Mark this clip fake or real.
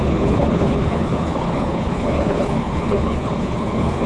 fake